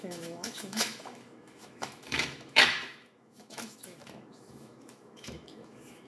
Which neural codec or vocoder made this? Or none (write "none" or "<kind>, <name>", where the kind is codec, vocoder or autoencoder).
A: autoencoder, DAC-VAE